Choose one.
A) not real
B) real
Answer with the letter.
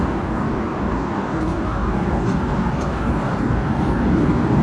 A